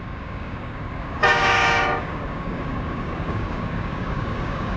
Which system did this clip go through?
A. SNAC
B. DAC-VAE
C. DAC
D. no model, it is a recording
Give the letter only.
C